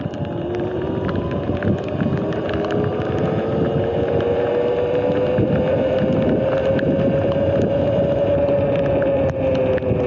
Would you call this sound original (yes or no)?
yes